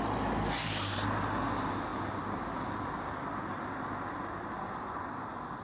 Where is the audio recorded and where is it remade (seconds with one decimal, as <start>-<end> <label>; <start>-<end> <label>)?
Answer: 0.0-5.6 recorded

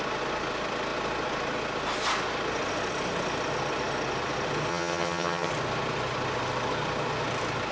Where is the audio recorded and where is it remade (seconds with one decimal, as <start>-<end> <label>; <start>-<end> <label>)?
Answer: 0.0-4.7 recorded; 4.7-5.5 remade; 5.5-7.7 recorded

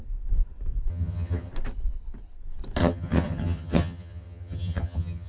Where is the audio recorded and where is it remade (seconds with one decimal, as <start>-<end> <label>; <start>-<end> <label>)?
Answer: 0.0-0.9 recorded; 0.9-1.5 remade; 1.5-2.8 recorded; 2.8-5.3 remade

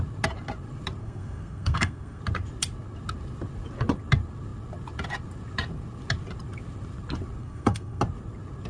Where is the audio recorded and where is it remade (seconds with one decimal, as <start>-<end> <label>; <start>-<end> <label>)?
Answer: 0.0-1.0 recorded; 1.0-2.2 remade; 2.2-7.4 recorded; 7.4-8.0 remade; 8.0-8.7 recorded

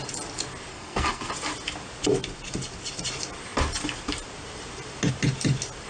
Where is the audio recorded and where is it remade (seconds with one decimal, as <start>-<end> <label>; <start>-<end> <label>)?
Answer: 0.0-0.7 recorded; 0.7-1.3 remade; 1.3-5.9 recorded

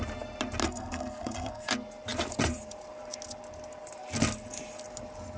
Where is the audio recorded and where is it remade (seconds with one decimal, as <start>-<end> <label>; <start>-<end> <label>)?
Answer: 0.0-0.6 recorded; 0.6-1.7 remade; 1.7-5.4 recorded

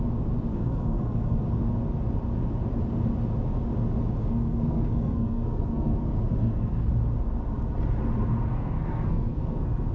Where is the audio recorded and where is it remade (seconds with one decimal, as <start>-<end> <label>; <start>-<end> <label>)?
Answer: 0.0-0.5 recorded; 0.5-1.4 remade; 1.4-4.2 recorded; 4.2-6.9 remade; 6.9-8.5 recorded; 8.5-9.9 remade